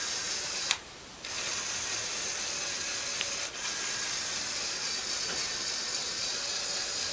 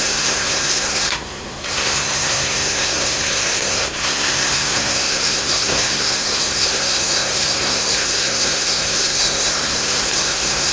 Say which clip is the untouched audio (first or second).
first